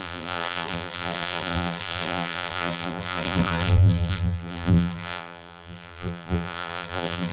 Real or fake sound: fake